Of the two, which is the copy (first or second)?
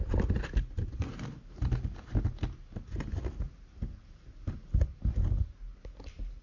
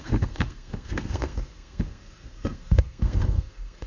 second